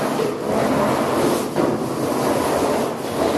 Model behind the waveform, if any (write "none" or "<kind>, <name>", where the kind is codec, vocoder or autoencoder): none